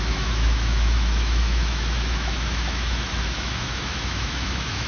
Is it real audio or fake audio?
fake